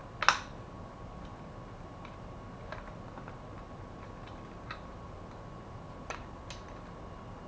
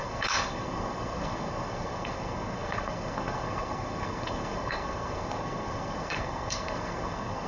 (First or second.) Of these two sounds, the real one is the first